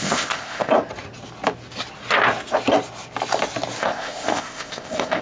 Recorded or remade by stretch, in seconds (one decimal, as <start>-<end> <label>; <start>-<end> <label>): 0.0-0.7 remade; 0.7-3.8 recorded; 3.8-5.2 remade